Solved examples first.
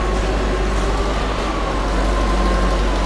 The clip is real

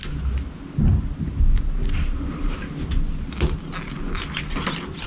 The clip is real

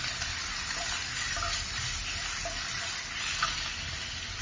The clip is real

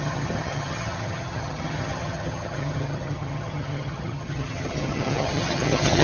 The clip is fake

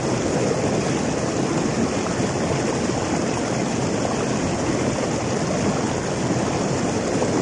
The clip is real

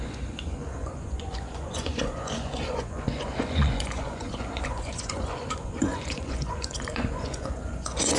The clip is fake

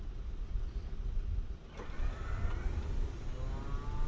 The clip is real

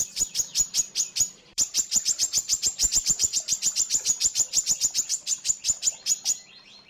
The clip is fake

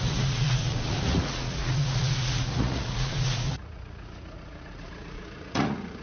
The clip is fake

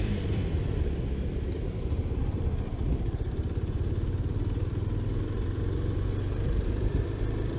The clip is fake